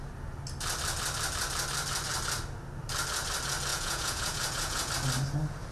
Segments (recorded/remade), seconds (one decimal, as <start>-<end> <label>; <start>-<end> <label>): 0.0-3.7 recorded; 3.7-4.9 remade; 4.9-5.7 recorded